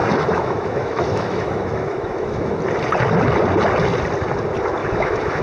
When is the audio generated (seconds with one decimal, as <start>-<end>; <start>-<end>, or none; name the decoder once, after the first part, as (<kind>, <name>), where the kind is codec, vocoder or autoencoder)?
0.0-2.6 (autoencoder, DAC-VAE); 4.8-5.4